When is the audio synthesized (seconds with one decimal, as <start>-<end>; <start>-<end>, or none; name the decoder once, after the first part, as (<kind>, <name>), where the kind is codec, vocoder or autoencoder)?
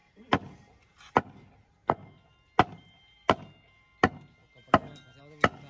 0.0-1.1 (vocoder, BigVGAN v2)